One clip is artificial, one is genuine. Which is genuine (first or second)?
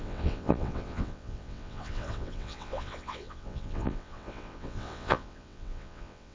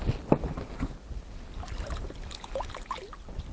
second